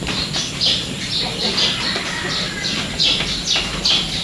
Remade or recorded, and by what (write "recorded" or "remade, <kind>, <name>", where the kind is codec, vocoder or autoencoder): recorded